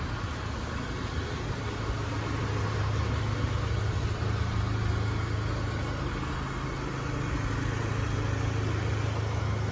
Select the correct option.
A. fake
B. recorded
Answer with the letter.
B